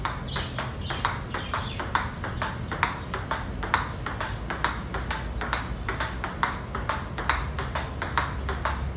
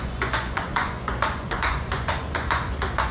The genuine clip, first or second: first